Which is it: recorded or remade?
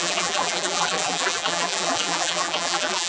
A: remade